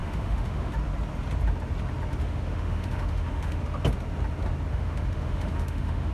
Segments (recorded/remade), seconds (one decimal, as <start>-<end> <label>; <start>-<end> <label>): 0.0-0.7 remade; 0.7-2.2 recorded; 2.2-3.6 remade; 3.6-4.7 recorded; 4.7-6.1 remade